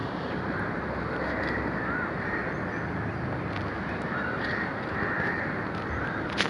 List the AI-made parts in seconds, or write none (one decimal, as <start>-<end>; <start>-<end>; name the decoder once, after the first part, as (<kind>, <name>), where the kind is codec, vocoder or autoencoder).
0.0-2.4 (vocoder, BigVGAN v2); 3.9-6.5